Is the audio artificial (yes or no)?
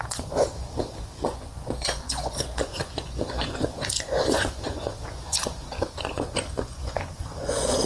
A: yes